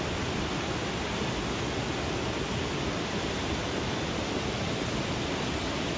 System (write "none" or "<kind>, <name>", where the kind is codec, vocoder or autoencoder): none